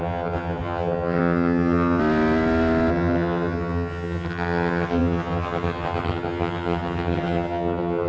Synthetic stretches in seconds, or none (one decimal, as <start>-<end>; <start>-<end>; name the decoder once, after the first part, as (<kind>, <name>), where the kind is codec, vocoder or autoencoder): 0.0-2.0 (vocoder, HiFi-GAN); 2.9-8.1